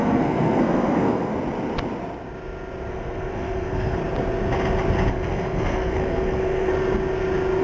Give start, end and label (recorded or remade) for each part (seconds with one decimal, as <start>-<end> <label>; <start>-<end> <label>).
0.0-1.3 remade; 1.3-2.9 recorded; 2.9-4.0 remade; 4.0-5.1 recorded; 5.1-6.7 remade; 6.7-7.6 recorded